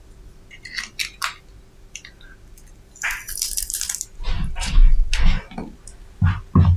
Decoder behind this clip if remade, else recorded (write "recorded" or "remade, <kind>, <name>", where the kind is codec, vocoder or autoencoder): recorded